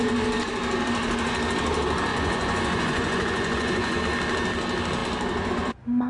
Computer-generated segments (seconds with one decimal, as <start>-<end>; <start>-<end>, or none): 2.1-4.0

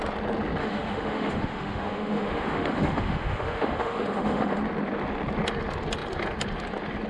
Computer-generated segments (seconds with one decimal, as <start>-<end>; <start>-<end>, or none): 0.6-4.6

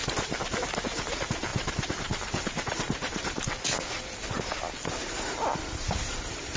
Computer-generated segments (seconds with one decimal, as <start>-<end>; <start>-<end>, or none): 1.0-6.6

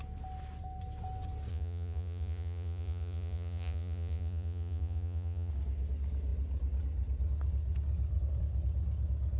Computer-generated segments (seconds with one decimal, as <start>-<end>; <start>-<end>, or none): 1.5-5.5

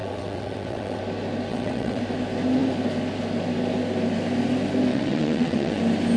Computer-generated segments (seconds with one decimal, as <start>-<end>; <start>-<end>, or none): 0.0-1.0; 1.5-2.0; 4.9-5.8

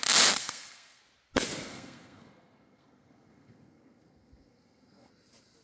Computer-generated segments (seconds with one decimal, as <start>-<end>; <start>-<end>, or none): 0.4-1.0; 1.7-5.1

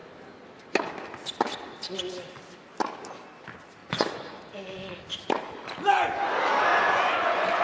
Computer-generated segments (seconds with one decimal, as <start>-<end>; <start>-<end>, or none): 3.8-4.4; 6.7-7.6